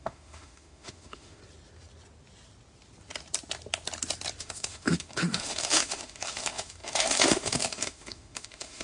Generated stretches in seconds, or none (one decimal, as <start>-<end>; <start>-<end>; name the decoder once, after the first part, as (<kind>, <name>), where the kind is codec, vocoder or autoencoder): 0.0-1.4 (autoencoder, DAC-VAE); 4.4-8.8